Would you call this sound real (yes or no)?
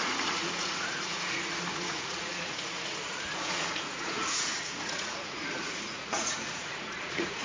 no